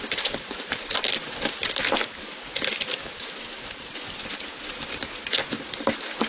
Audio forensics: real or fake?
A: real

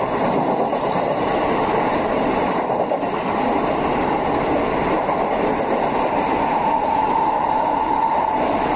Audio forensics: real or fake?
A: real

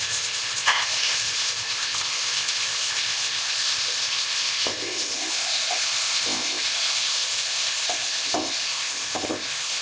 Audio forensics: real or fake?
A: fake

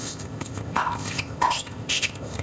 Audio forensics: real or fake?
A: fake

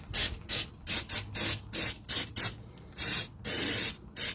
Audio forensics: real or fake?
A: real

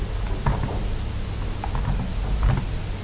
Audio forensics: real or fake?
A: real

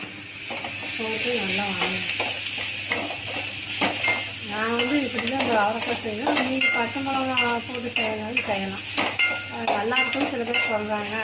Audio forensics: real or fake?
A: real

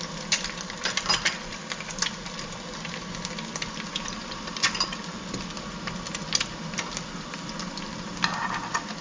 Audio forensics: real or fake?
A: real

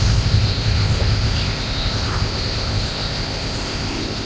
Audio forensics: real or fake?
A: fake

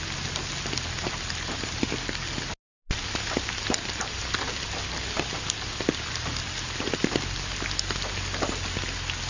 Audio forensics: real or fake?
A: real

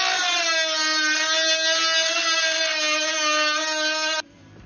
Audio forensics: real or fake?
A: real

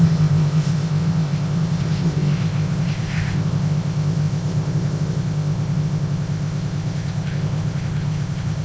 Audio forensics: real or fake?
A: fake